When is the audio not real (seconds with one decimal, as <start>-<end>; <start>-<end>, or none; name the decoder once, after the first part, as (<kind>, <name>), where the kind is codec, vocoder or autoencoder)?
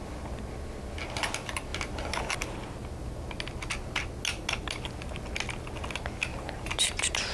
6.3-7.3 (vocoder, BigVGAN v2)